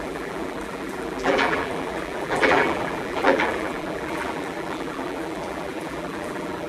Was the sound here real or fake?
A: fake